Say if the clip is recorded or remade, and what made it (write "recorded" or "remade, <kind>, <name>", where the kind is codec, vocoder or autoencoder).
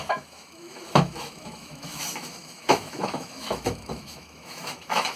remade, autoencoder, DAC-VAE